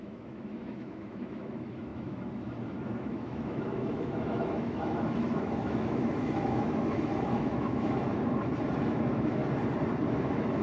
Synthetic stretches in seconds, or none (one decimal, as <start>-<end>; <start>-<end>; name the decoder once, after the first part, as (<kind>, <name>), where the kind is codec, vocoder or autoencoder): 0.0-8.1 (autoencoder, DAC-VAE); 8.8-9.4; 10.1-10.6